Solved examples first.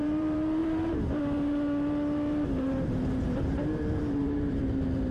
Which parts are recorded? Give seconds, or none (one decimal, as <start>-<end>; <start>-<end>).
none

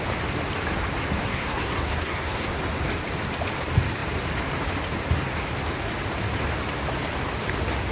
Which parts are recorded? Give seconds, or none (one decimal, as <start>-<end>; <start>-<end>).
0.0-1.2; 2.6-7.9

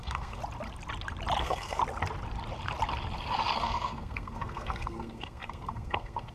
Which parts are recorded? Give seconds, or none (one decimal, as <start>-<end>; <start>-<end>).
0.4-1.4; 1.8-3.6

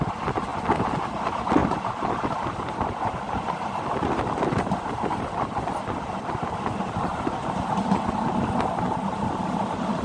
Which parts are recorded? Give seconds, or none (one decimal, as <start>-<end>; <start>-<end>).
0.0-1.6; 2.1-7.1; 7.7-10.0

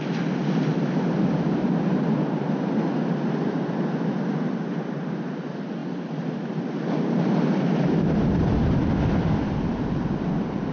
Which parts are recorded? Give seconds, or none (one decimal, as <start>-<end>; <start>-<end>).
0.0-10.7

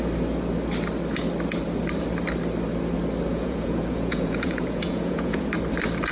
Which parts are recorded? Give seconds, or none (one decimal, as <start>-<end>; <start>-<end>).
0.0-3.3; 5.5-6.1